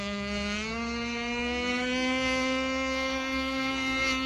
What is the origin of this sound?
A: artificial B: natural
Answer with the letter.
A